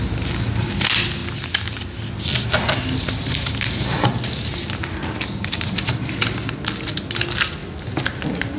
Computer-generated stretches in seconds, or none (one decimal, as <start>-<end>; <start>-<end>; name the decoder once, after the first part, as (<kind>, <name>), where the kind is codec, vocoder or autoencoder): none